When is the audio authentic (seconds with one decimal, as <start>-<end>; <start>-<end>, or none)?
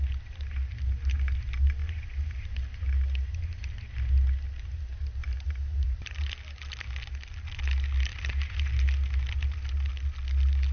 0.0-1.8; 2.5-5.2; 6.3-8.1; 9.0-10.7